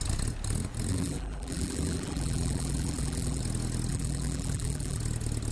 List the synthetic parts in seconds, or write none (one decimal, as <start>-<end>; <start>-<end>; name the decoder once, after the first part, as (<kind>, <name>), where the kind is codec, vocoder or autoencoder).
0.9-3.4 (vocoder, BigVGAN v2); 3.9-5.0